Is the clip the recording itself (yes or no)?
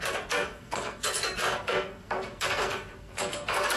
no